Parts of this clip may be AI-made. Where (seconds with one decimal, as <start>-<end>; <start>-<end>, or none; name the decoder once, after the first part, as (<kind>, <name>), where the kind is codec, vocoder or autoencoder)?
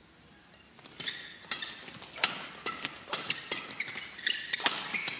none